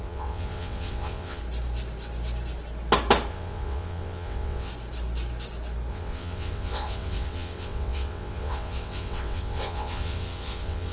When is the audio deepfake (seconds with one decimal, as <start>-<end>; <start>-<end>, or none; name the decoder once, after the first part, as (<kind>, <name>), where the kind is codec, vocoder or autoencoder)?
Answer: 0.0-1.4 (vocoder, WaveNeXt); 3.3-4.7; 5.9-10.9